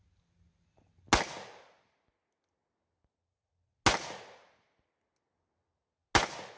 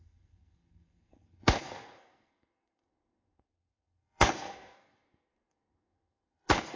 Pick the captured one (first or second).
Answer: first